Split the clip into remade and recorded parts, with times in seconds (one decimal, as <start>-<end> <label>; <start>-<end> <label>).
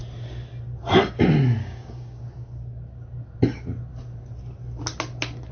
0.0-1.6 recorded; 1.6-2.2 remade; 2.2-5.5 recorded